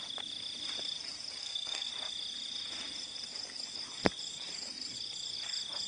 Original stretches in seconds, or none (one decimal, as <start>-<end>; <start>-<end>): 0.0-1.4; 1.9-5.9